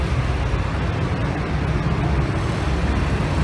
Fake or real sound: real